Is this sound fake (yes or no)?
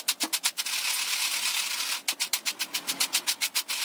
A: no